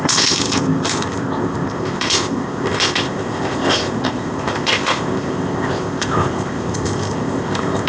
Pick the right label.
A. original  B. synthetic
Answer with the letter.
B